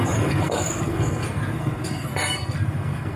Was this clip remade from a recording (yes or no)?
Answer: yes